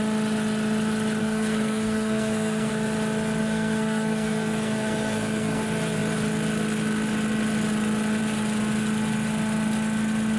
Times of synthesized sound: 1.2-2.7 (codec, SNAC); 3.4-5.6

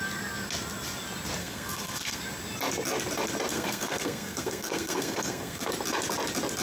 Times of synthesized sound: 1.4-2.2 (codec, SNAC); 3.5-5.7

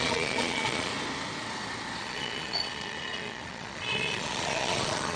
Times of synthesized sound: 0.0-0.9 (vocoder, Vocos); 2.0-5.2

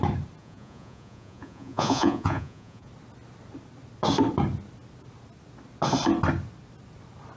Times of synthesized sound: 0.4-2.9 (vocoder, Vocos)

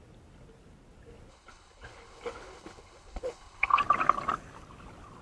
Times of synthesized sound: 1.3-3.8 (codec, HILCodec)